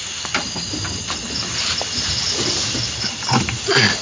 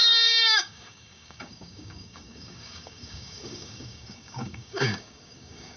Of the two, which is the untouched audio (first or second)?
first